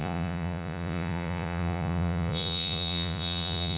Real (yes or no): no